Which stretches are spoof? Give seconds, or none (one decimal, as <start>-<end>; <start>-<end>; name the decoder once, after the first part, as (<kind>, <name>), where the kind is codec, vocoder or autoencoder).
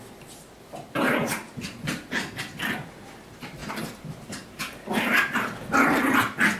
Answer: 3.6-4.6 (vocoder, BigVGAN v2)